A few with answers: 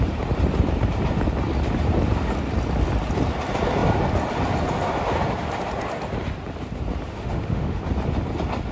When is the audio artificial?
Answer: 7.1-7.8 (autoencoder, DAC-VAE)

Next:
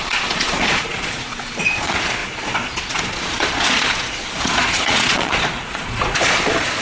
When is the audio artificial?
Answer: 0.0-6.8 (vocoder, Vocos)

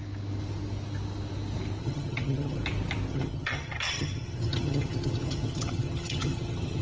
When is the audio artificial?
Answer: 1.8-2.6 (vocoder, HiFi-GAN); 3.1-6.8